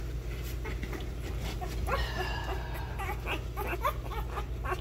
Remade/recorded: recorded